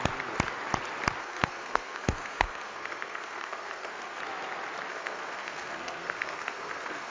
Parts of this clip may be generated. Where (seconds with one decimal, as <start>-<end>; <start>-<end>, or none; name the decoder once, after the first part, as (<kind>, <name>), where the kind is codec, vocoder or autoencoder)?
1.2-4.2 (codec, SNAC); 4.9-7.1